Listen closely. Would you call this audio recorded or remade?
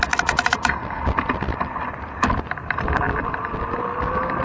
recorded